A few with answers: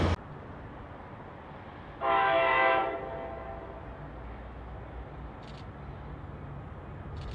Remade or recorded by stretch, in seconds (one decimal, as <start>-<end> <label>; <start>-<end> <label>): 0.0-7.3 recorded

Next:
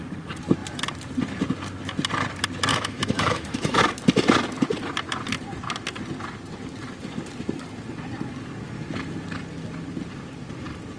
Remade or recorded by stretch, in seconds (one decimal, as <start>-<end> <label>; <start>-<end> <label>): 0.0-2.7 recorded; 2.7-3.8 remade; 3.8-11.0 recorded

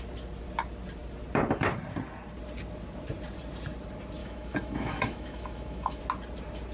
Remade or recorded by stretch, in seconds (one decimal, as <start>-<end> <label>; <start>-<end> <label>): 0.0-4.2 recorded; 4.2-6.0 remade; 6.0-6.7 recorded

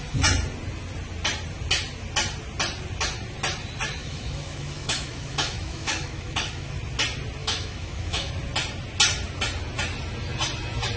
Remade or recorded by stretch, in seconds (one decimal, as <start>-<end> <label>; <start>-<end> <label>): 0.0-4.0 recorded; 4.0-6.7 remade; 6.7-7.4 recorded; 7.4-8.3 remade; 8.3-11.0 recorded

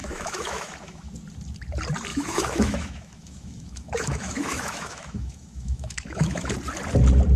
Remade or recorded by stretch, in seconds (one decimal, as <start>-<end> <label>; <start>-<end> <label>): 0.0-1.1 remade; 1.1-2.1 recorded; 2.1-6.5 remade; 6.5-7.4 recorded

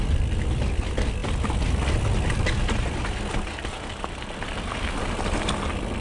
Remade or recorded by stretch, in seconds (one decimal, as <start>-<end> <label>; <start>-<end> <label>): 0.0-6.0 recorded

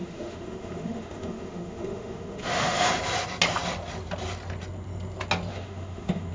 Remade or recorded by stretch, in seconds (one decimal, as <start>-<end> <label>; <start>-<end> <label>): 0.0-2.9 remade; 2.9-5.5 recorded; 5.5-6.3 remade

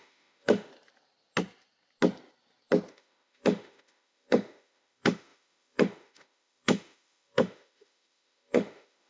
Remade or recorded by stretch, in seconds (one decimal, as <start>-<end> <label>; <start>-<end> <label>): 0.0-0.7 remade; 0.7-2.9 recorded; 2.9-9.1 remade